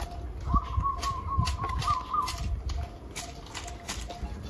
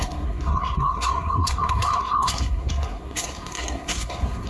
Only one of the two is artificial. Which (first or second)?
second